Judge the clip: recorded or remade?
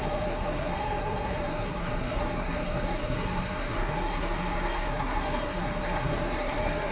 remade